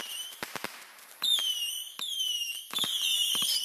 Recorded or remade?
remade